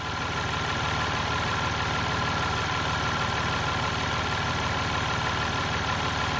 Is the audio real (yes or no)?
yes